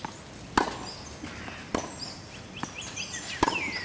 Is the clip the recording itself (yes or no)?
yes